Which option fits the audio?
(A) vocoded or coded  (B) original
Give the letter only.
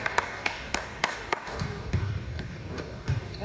A